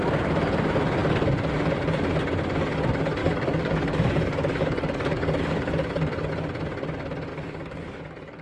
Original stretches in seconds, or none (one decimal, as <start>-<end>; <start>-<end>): 0.0-3.2; 6.3-7.3